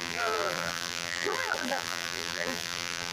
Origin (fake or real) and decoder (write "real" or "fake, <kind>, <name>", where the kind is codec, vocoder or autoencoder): fake, vocoder, BigVGAN v2